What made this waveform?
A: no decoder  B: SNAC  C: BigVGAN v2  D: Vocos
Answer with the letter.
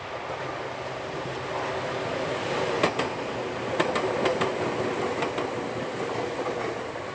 A